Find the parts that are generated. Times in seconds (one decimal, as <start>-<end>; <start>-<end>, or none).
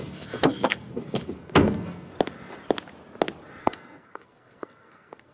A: 0.0-2.1; 3.6-5.3